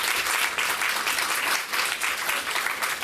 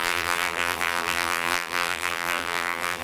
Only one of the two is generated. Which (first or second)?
second